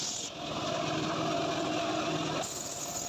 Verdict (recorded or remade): recorded